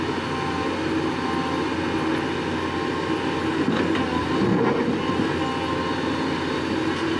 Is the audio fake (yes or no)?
no